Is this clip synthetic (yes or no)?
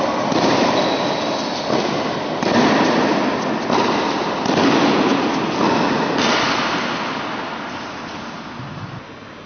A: no